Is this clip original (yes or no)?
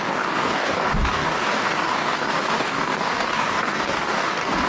no